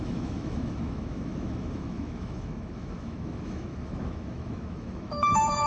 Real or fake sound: fake